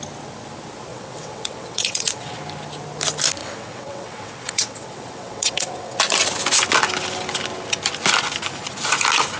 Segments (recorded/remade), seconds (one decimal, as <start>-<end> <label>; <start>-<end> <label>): 0.0-0.9 recorded; 0.9-2.4 remade; 2.4-3.4 recorded; 3.4-6.0 remade; 6.0-9.4 recorded